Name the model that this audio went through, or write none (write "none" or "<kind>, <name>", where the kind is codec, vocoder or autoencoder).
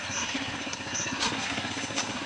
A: codec, SNAC